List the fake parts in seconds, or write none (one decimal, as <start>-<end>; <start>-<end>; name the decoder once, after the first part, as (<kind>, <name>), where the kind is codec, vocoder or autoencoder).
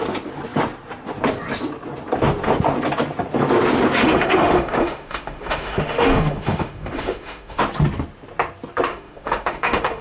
4.0-7.6 (autoencoder, DAC-VAE); 8.9-10.0